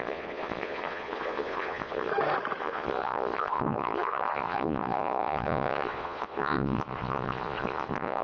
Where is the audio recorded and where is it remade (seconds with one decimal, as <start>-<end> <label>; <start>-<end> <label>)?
0.0-2.1 remade; 2.1-2.6 recorded; 2.6-8.2 remade